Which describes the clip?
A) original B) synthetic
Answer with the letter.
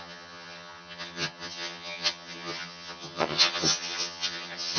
B